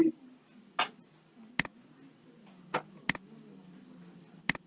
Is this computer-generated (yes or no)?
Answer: no